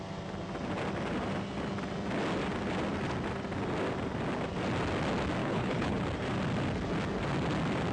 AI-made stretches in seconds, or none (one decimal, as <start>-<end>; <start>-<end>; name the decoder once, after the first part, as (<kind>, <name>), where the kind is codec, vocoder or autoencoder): 5.4-6.0 (codec, HILCodec)

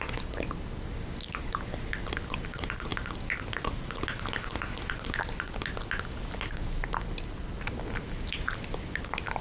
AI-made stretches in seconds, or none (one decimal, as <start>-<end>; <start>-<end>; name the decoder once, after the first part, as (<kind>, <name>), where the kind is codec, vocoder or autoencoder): none

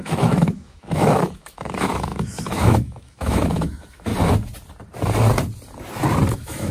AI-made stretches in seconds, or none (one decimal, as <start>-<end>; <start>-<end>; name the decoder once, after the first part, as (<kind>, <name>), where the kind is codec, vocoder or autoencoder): 0.0-4.1 (autoencoder, DAC-VAE); 6.3-6.7

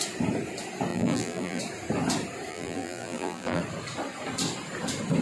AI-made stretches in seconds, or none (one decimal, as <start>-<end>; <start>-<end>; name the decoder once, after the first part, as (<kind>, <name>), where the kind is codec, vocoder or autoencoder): 0.9-1.6 (vocoder, BigVGAN v2); 2.5-3.6

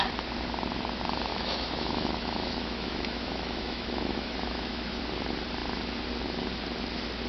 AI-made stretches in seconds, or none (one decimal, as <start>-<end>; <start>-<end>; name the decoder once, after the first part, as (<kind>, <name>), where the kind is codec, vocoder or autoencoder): 1.3-5.0 (autoencoder, DAC-VAE)